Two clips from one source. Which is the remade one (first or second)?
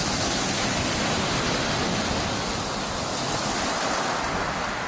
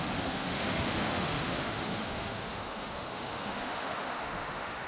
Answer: second